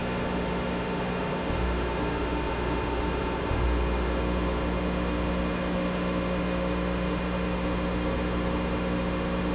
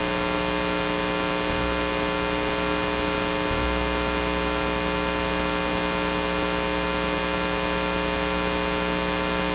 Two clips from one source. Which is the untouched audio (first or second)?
second